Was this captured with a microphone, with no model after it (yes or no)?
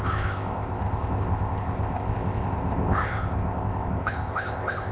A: no